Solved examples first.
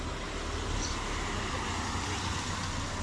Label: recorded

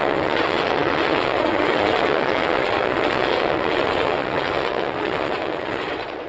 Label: remade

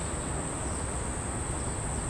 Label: recorded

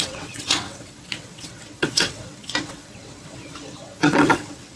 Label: remade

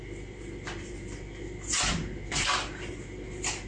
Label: recorded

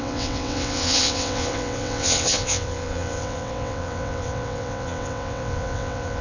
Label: remade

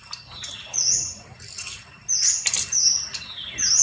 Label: recorded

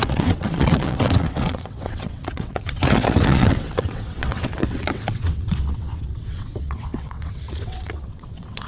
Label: remade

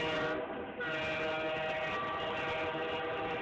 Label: recorded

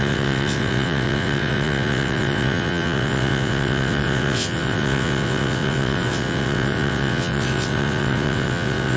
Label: remade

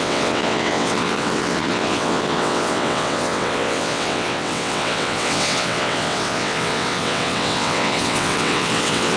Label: remade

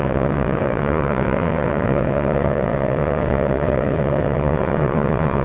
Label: remade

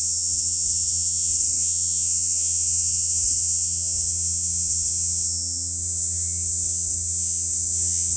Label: remade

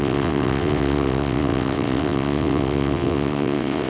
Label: remade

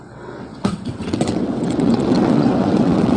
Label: remade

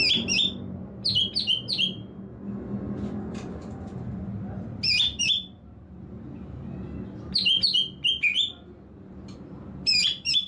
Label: recorded